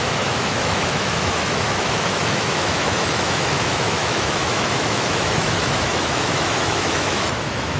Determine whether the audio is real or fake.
fake